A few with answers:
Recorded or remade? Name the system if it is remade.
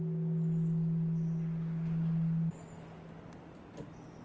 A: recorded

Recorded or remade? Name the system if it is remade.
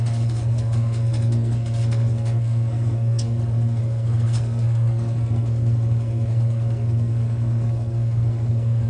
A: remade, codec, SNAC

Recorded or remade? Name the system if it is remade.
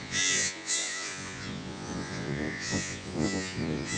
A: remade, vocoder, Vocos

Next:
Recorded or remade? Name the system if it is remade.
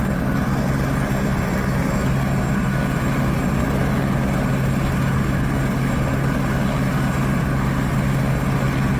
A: recorded